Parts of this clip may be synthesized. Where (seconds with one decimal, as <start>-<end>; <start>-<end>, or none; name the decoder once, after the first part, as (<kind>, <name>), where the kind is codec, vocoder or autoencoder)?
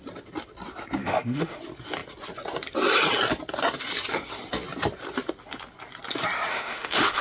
1.0-1.6 (autoencoder, DAC-VAE); 6.5-7.2